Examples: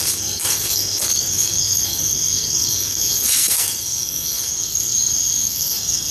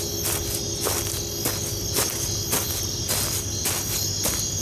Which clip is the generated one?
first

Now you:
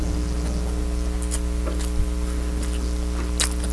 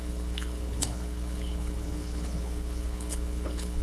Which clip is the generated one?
second